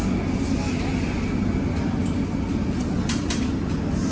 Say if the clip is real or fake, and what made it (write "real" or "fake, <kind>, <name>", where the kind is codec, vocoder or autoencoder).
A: real